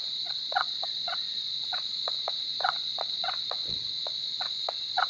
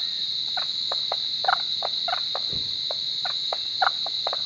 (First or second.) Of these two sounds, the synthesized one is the first